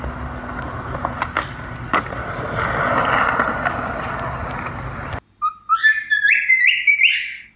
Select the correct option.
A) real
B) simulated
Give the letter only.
A